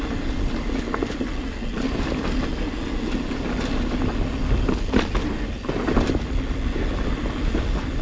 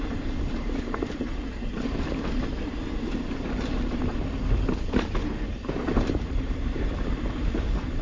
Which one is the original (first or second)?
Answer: first